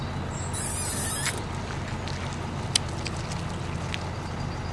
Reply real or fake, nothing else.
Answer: real